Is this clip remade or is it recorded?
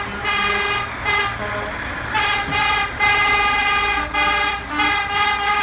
recorded